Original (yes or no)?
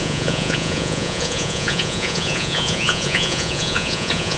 no